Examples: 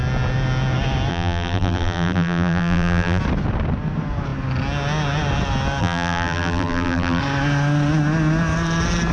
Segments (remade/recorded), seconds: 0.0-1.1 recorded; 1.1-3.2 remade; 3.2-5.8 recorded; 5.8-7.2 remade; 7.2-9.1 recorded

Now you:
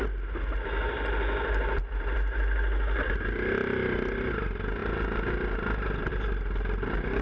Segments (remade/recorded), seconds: 0.0-3.6 recorded; 3.6-4.3 remade; 4.3-7.2 recorded

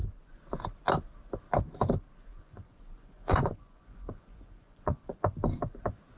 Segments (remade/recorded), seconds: 0.0-2.3 recorded; 2.3-5.1 remade; 5.1-6.2 recorded

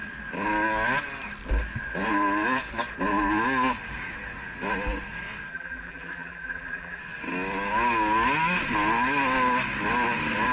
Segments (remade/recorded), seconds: 0.0-5.5 recorded; 5.5-7.0 remade; 7.0-10.5 recorded

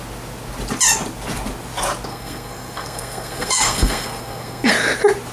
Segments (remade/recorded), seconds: 0.0-2.1 recorded; 2.1-4.7 remade; 4.7-5.3 recorded

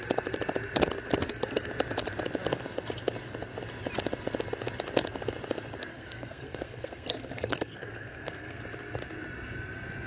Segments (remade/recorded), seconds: 0.0-1.2 recorded; 1.2-1.7 remade; 1.7-5.9 recorded; 5.9-8.6 remade; 8.6-10.1 recorded

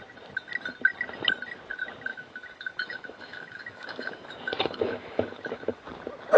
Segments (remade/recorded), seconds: 0.0-2.1 recorded; 2.1-5.9 remade; 5.9-6.4 recorded